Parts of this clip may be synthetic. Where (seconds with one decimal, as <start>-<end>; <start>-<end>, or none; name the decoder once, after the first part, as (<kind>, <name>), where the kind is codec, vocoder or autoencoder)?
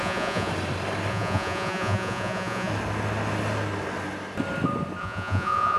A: 0.0-0.5 (vocoder, Vocos); 1.1-2.7; 5.0-5.8